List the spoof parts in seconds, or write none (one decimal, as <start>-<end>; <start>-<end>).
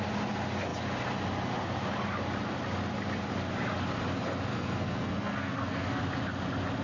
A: 4.5-6.0